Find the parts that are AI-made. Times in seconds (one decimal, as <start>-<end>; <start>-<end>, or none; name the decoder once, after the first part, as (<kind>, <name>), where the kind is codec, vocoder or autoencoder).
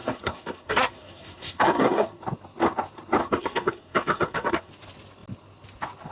0.0-2.2 (codec, SNAC); 3.2-4.7